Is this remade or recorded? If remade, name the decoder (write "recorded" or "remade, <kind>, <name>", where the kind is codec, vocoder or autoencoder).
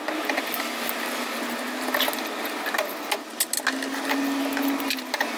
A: recorded